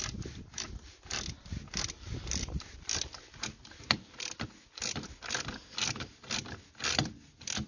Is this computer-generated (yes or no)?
no